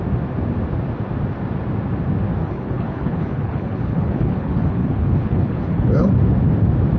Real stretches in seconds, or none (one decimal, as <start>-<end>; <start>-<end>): 0.0-2.4; 6.1-7.0